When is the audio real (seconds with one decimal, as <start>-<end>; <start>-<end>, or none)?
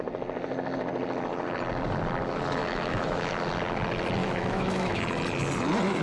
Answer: 0.0-2.6; 3.3-4.2; 5.0-6.0